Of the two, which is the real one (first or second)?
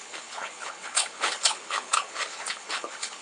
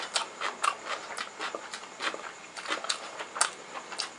second